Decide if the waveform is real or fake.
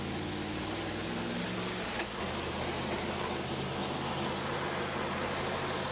real